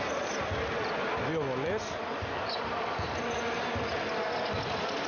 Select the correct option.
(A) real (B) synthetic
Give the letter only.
A